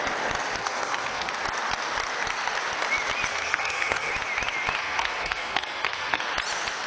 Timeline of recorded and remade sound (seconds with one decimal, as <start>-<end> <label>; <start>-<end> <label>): 0.0-0.6 recorded; 0.6-1.3 remade; 1.3-3.3 recorded; 3.3-4.1 remade; 4.1-4.8 recorded; 4.8-6.2 remade; 6.2-6.9 recorded